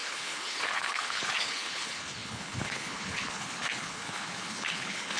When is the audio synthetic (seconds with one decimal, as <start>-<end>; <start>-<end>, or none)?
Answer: 0.0-5.2